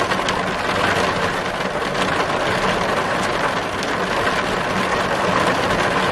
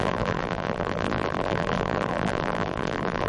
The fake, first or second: second